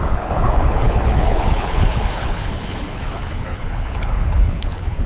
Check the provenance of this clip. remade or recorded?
remade